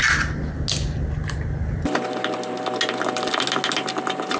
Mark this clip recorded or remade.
recorded